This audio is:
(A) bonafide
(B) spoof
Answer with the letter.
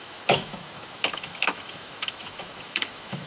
B